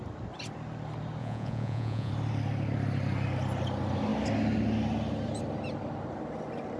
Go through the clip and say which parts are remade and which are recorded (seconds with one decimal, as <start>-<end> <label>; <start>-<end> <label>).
0.0-1.2 recorded; 1.2-2.1 remade; 2.1-6.8 recorded